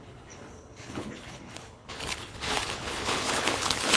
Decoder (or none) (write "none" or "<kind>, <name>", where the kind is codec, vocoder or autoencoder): codec, HILCodec